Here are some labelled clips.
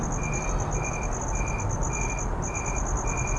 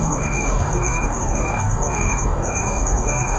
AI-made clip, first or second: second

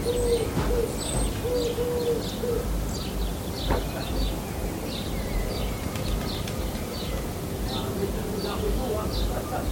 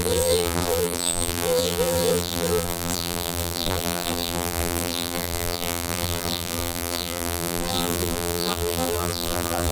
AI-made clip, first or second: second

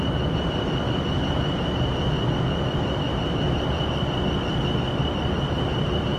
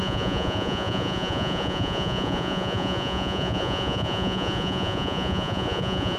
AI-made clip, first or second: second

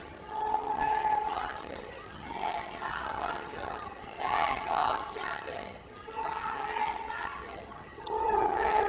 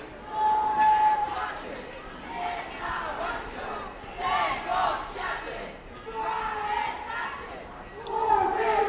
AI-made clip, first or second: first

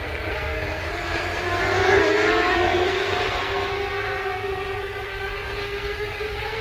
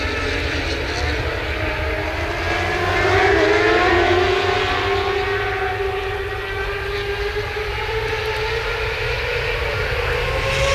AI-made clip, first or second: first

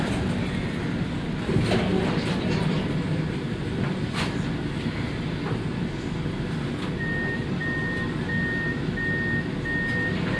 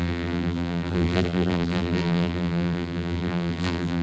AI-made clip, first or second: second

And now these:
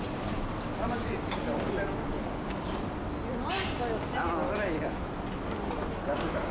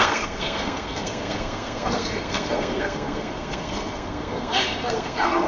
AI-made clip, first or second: second